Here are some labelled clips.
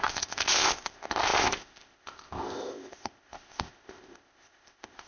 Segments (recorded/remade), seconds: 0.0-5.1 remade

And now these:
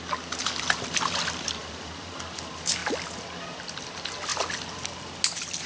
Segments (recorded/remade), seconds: 0.0-0.4 recorded; 0.4-2.1 remade; 2.1-5.7 recorded

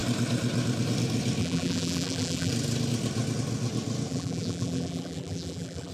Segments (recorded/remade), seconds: 0.0-1.4 recorded; 1.4-2.5 remade; 2.5-4.1 recorded; 4.1-5.9 remade

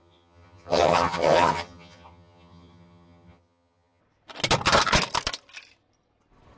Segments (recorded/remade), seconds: 0.0-4.0 remade; 4.0-6.6 recorded